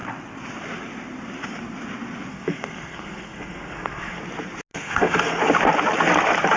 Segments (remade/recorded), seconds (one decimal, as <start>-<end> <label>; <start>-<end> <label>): 0.0-2.3 recorded; 2.3-4.2 remade; 4.2-4.7 recorded; 4.7-5.4 remade; 5.4-6.6 recorded